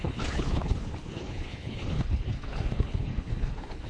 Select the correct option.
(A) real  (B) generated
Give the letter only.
B